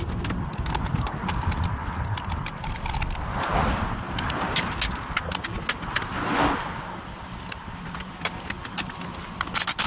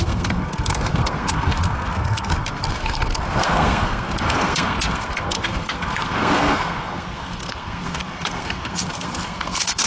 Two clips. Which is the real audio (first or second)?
first